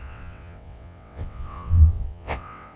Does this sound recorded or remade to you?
remade